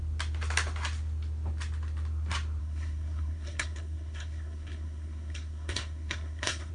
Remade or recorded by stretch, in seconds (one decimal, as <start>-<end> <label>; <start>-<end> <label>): 0.0-2.6 recorded; 2.6-6.7 remade